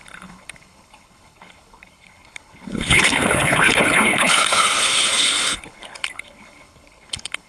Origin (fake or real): fake